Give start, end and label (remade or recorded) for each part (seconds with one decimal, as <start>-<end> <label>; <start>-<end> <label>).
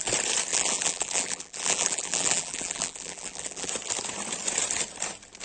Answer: 0.0-0.5 recorded; 0.5-3.7 remade; 3.7-5.4 recorded